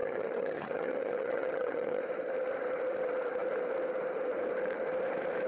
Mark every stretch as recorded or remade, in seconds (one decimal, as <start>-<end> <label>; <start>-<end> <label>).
0.0-2.0 remade; 2.0-5.5 recorded